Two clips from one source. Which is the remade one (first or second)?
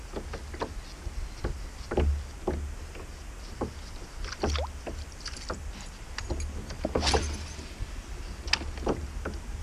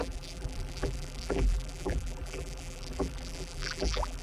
second